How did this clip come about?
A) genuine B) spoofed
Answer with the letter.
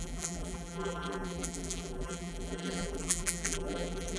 B